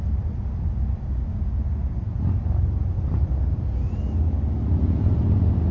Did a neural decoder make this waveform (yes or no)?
no